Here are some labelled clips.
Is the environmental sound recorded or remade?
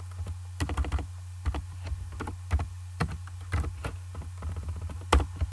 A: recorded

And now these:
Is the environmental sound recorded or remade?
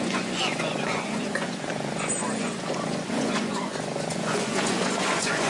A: remade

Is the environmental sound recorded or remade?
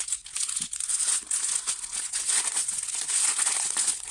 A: remade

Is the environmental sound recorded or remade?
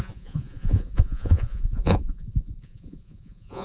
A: remade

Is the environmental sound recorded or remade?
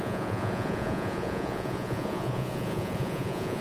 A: remade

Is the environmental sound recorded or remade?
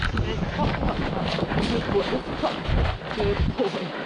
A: recorded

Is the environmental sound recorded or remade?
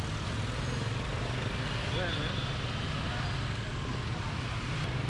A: recorded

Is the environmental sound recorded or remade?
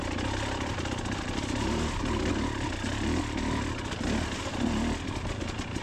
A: recorded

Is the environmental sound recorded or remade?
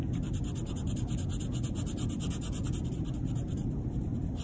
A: recorded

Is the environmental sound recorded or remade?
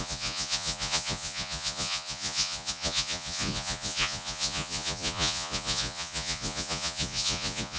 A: remade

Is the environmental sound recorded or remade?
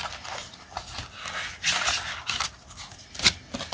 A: recorded